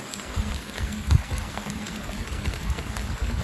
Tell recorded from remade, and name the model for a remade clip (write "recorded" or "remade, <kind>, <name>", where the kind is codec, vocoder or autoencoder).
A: remade, codec, SNAC